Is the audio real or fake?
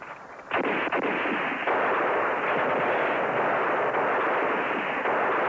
real